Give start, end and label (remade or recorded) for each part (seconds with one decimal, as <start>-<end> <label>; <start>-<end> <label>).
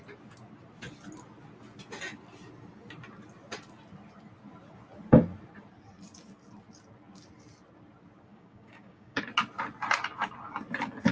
0.0-8.3 recorded; 8.3-9.2 remade; 9.2-11.1 recorded